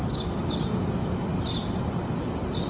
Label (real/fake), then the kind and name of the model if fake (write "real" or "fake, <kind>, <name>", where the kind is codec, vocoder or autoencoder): real